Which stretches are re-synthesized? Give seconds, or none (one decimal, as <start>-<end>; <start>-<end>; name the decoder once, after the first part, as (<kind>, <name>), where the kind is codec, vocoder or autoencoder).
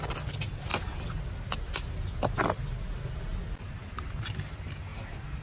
none